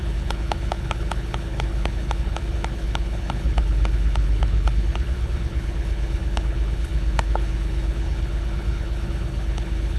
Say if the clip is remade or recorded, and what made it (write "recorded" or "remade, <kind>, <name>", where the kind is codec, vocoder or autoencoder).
remade, codec, HILCodec